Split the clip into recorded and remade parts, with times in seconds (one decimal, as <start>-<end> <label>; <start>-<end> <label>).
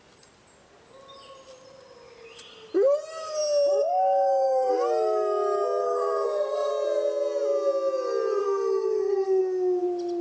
0.0-3.7 recorded; 3.7-4.7 remade; 4.7-5.8 recorded; 5.8-6.7 remade; 6.7-8.4 recorded; 8.4-9.4 remade; 9.4-10.2 recorded